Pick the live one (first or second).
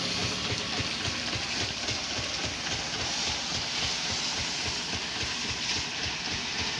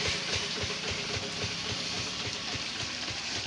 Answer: first